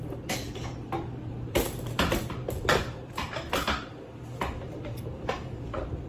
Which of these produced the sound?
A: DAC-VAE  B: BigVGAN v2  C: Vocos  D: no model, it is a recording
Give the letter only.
B